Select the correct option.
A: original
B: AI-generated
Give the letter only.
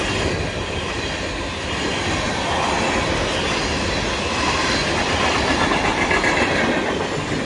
A